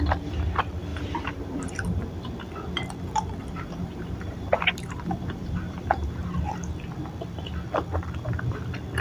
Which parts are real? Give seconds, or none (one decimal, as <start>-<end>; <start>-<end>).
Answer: 0.0-0.9; 2.0-3.4; 6.3-9.0